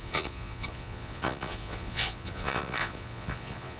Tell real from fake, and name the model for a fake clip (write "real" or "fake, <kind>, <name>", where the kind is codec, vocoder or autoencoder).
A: fake, vocoder, Vocos